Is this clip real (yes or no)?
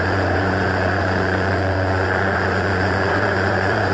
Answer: no